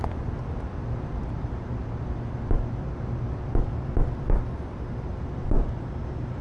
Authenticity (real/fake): fake